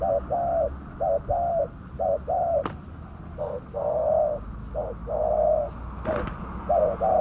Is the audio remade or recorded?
recorded